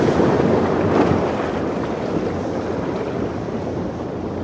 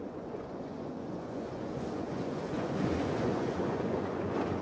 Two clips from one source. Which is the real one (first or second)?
first